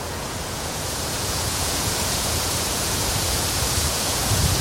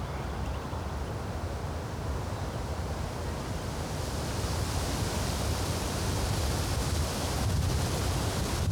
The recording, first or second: second